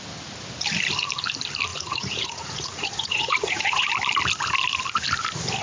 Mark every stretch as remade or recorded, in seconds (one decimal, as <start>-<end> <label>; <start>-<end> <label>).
0.0-1.7 recorded; 1.7-3.9 remade; 3.9-5.6 recorded